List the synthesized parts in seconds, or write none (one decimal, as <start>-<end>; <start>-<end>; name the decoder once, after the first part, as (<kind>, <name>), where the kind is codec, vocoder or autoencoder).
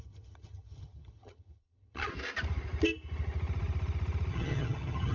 0.0-2.1 (vocoder, HiFi-GAN); 4.3-5.1